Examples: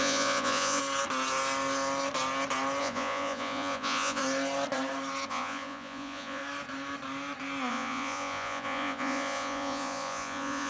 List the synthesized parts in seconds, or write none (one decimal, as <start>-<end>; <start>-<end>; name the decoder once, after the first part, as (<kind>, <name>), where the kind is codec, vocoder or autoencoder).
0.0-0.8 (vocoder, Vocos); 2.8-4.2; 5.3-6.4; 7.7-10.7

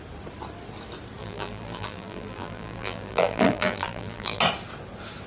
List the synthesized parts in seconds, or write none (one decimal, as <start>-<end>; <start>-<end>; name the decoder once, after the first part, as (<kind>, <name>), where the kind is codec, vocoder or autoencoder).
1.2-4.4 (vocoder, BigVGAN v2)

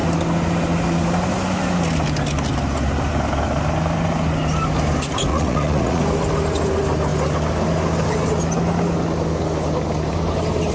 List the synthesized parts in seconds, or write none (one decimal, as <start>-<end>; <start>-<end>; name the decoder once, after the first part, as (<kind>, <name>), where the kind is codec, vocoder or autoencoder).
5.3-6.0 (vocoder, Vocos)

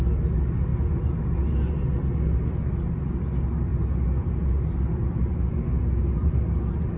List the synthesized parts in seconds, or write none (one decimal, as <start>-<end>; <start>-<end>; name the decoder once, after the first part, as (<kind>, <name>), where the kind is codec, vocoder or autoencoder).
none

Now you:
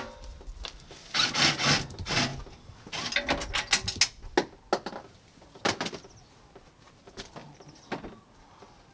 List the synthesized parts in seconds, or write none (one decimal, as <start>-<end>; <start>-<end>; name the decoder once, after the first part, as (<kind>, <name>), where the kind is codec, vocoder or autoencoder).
none

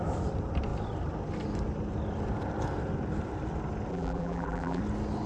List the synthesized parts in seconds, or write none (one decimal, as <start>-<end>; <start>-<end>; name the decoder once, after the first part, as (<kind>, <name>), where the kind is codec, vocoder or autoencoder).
3.9-4.8 (vocoder, BigVGAN v2)

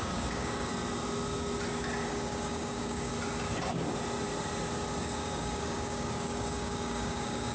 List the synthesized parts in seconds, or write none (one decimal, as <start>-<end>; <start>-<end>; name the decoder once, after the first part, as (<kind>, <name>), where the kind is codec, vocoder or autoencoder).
0.0-0.7 (codec, DAC); 2.1-3.1; 5.0-7.5

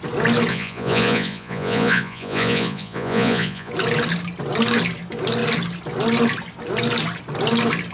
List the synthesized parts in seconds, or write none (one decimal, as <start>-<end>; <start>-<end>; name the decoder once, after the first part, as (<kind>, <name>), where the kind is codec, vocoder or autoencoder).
0.5-3.7 (vocoder, Vocos)